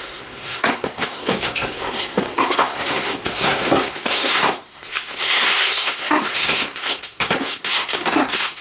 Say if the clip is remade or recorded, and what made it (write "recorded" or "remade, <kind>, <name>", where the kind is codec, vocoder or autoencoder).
remade, codec, SNAC